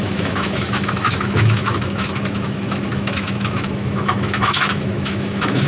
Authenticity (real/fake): fake